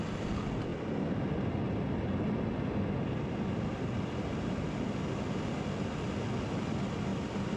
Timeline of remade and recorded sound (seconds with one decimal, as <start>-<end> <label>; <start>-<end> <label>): 0.0-7.6 recorded